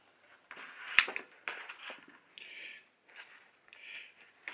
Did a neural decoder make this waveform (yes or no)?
no